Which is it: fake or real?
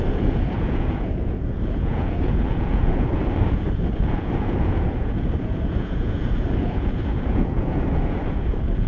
fake